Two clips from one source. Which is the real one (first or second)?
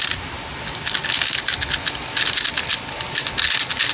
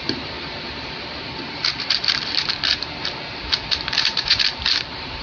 first